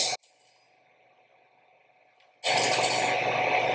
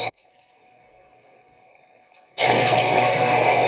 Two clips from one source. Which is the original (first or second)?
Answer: first